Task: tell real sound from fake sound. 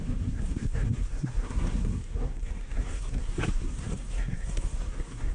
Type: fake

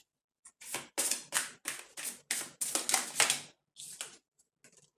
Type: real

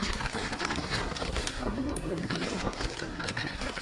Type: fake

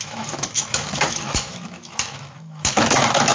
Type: fake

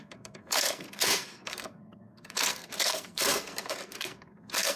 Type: fake